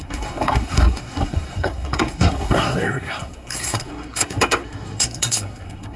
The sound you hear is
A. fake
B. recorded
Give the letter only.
A